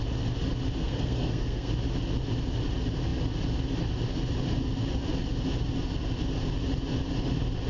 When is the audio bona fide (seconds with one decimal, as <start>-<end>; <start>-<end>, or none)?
0.0-0.8; 1.7-7.7